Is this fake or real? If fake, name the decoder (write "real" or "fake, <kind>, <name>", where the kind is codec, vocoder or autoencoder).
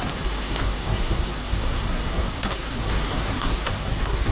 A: fake, codec, SNAC